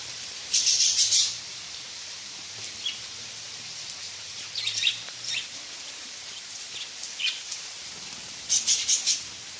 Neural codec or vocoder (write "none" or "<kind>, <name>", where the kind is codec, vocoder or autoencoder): vocoder, BigVGAN v2